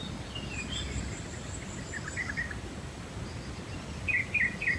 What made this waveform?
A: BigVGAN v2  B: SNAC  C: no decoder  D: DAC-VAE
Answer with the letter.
C